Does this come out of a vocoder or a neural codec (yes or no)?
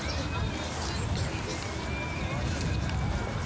no